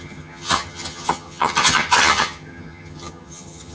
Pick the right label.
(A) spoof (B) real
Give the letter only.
A